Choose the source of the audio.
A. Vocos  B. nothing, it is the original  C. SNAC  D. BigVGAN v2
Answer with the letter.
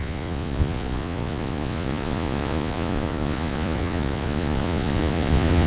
A